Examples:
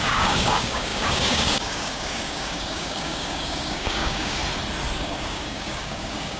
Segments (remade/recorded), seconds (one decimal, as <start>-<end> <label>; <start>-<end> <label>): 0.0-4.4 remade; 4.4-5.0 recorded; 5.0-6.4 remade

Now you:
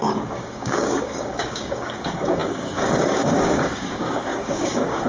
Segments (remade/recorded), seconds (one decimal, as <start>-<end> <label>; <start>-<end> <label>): 0.0-5.1 remade

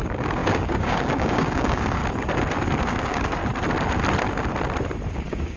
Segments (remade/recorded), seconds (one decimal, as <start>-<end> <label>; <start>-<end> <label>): 0.0-2.0 remade; 2.0-2.8 recorded; 2.8-3.4 remade; 3.4-5.1 recorded; 5.1-5.6 remade

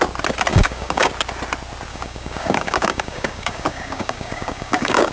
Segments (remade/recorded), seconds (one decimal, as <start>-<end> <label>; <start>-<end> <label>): 0.0-0.5 recorded; 0.5-1.1 remade; 1.1-1.9 recorded; 1.9-5.1 remade

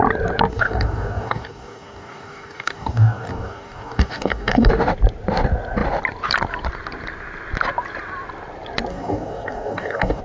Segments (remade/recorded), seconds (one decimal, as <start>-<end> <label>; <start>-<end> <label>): 0.0-0.5 recorded; 0.5-4.7 remade; 4.7-8.9 recorded; 8.9-10.2 remade

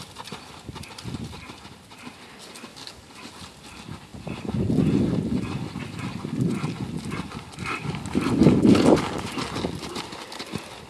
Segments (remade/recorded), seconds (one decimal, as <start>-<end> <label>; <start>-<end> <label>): 0.0-2.7 recorded; 2.7-3.3 remade; 3.3-10.9 recorded